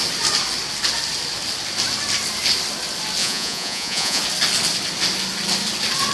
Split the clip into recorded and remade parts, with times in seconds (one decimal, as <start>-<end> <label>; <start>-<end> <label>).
0.0-3.2 recorded; 3.2-4.2 remade; 4.2-6.1 recorded